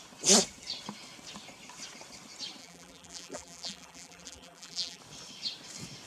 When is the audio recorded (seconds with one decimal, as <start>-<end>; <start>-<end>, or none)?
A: 0.0-2.6; 5.0-6.1